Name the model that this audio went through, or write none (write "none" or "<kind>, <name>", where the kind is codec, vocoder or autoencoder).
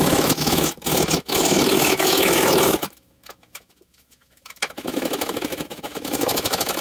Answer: autoencoder, DAC-VAE